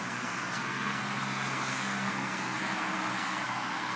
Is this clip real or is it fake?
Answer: fake